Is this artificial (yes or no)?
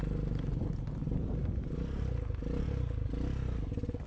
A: no